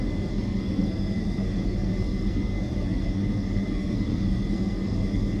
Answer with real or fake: fake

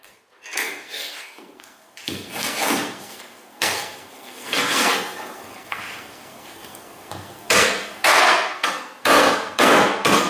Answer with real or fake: fake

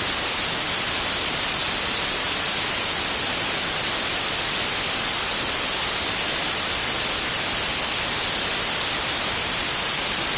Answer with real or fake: real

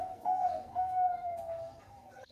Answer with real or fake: fake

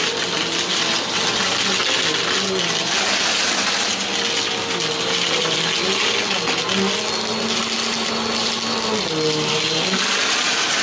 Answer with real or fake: real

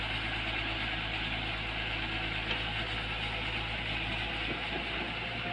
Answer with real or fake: real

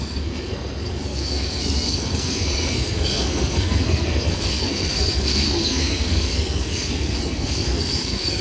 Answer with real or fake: fake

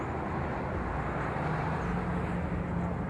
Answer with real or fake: real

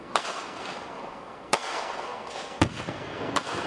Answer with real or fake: fake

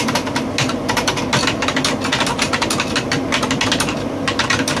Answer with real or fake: real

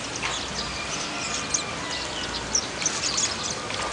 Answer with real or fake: real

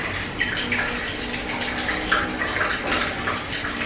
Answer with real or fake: real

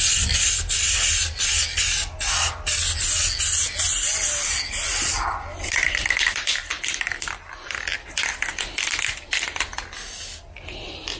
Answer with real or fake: real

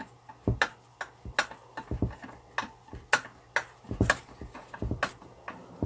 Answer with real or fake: real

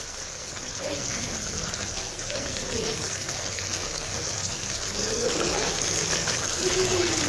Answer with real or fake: fake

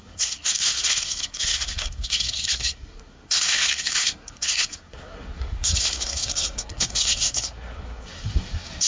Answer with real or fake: fake